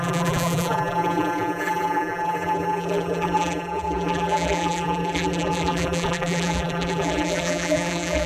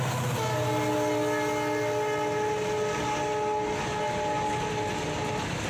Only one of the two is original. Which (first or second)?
second